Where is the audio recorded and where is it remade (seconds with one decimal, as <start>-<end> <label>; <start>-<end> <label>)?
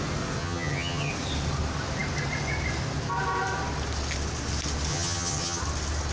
0.0-0.4 recorded; 0.4-1.1 remade; 1.1-4.9 recorded; 4.9-5.6 remade; 5.6-6.1 recorded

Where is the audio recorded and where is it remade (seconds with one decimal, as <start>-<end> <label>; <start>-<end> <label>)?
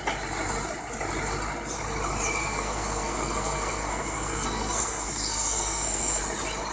0.0-2.4 recorded; 2.4-6.2 remade; 6.2-6.7 recorded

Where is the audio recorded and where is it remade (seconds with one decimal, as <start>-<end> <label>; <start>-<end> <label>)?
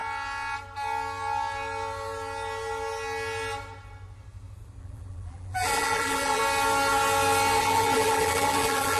0.0-4.8 recorded; 4.8-6.4 remade; 6.4-7.6 recorded; 7.6-9.0 remade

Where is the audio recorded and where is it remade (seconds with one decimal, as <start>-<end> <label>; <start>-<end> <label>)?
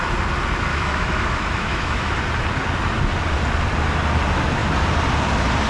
0.0-0.7 recorded; 0.7-2.1 remade; 2.1-5.7 recorded